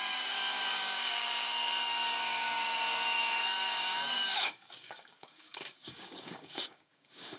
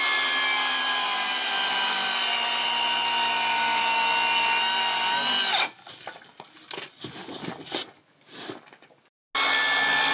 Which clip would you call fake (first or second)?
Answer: first